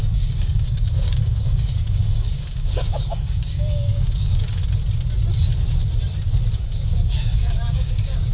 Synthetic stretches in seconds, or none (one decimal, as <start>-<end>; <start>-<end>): 0.0-4.6; 6.6-8.3